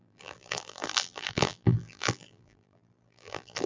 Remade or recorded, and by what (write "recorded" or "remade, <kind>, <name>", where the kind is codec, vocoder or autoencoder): remade, vocoder, BigVGAN v2